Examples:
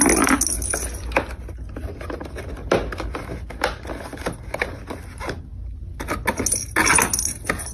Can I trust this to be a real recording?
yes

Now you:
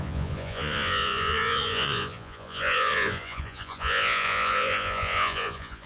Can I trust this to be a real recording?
no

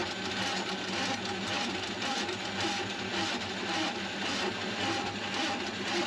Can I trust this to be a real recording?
yes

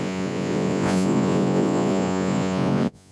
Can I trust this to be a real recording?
no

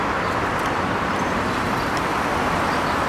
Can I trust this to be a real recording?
yes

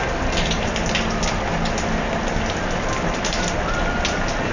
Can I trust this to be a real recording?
yes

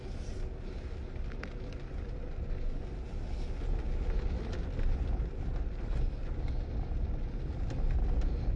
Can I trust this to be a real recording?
yes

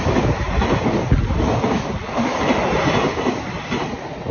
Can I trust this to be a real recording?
yes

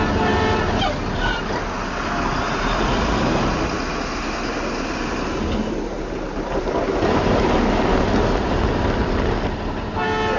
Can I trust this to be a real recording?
yes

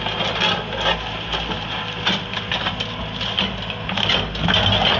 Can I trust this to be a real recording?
yes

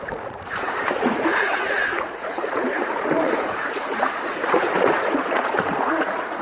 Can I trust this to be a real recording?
no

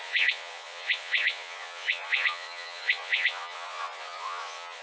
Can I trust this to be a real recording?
no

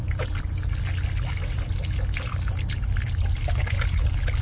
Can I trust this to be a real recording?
yes